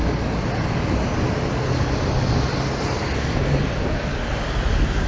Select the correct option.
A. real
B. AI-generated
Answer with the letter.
A